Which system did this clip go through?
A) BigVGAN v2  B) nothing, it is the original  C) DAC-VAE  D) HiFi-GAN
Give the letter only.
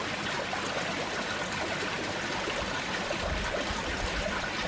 B